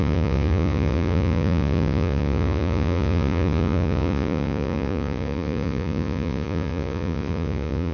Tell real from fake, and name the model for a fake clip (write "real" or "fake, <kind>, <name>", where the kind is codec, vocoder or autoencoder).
fake, vocoder, Vocos